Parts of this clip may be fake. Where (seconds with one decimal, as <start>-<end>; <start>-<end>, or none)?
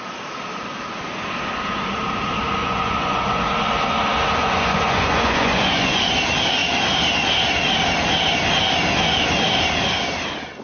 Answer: 2.6-3.4; 4.4-6.0